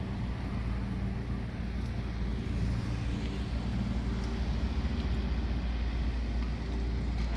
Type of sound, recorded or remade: recorded